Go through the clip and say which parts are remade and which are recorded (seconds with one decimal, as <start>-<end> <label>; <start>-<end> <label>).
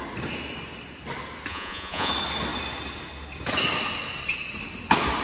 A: 0.0-1.5 recorded; 1.5-2.1 remade; 2.1-5.2 recorded